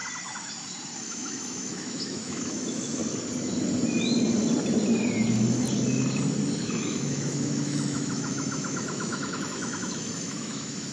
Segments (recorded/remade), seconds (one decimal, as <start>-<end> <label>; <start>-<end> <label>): 0.0-1.0 recorded; 1.0-3.0 remade; 3.0-6.6 recorded; 6.6-10.9 remade